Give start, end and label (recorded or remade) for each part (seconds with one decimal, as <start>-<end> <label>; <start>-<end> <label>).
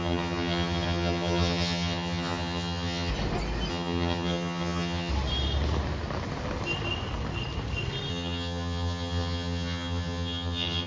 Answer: 0.0-3.1 remade; 3.1-3.7 recorded; 3.7-5.1 remade; 5.1-8.1 recorded; 8.1-10.9 remade